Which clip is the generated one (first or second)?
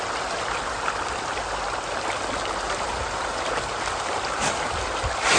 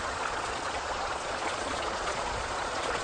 second